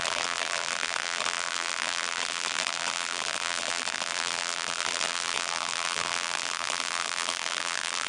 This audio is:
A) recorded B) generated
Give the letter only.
B